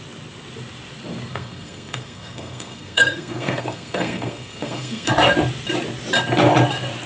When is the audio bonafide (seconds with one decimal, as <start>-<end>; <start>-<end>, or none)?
0.0-1.3; 5.1-7.1